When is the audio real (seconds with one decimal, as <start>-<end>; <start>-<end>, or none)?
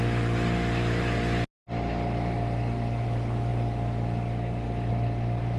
0.0-5.6